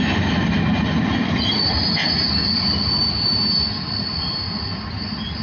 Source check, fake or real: real